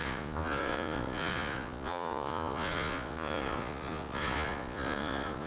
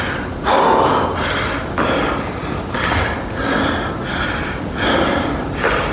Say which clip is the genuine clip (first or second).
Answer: second